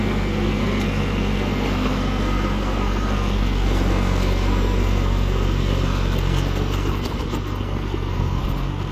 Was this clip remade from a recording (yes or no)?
yes